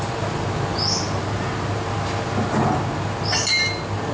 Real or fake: real